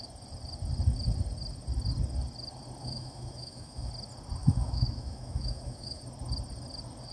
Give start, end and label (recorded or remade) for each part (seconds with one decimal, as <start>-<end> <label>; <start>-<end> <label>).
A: 0.0-2.8 recorded; 2.8-3.9 remade; 3.9-4.4 recorded; 4.4-6.0 remade; 6.0-7.1 recorded